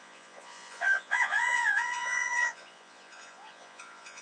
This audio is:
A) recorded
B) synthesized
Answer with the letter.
B